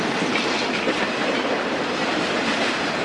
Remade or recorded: recorded